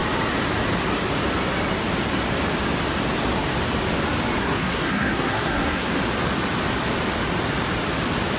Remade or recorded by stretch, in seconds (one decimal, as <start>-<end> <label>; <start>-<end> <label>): 0.0-4.4 recorded; 4.4-6.0 remade; 6.0-8.4 recorded